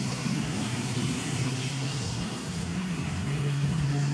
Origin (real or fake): fake